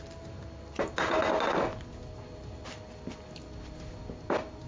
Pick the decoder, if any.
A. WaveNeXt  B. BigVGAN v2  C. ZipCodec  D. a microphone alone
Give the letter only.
D